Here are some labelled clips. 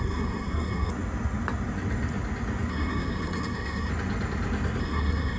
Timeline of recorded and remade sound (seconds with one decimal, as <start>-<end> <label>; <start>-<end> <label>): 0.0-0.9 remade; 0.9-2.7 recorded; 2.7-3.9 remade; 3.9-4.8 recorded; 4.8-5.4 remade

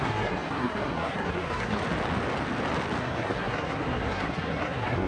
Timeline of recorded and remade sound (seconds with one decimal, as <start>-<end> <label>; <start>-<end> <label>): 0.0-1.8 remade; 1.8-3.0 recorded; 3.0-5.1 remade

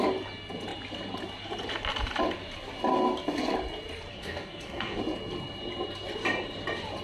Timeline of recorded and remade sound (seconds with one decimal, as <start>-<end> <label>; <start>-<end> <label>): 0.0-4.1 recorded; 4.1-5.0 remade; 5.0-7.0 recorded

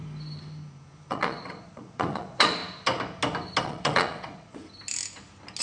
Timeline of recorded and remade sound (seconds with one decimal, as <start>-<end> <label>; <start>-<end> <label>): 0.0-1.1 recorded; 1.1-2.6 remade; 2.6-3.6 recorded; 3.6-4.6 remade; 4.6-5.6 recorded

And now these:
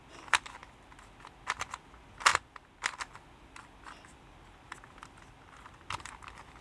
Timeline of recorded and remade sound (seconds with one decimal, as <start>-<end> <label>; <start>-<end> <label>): 0.0-6.6 recorded